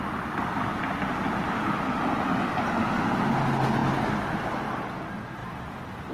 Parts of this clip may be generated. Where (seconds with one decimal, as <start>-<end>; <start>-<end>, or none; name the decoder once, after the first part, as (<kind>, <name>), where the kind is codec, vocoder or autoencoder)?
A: 5.4-6.1 (vocoder, BigVGAN v2)